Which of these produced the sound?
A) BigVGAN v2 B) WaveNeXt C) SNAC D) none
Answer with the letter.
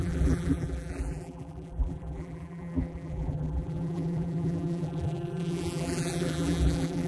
A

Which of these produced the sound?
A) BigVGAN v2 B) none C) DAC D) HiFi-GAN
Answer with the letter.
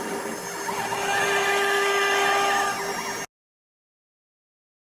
B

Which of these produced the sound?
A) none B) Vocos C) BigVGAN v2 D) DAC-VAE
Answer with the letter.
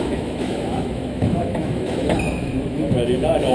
D